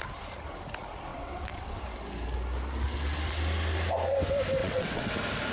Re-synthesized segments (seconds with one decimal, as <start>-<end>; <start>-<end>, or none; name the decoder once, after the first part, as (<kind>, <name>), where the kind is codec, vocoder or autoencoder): 1.1-1.8 (vocoder, WaveNeXt); 4.6-5.1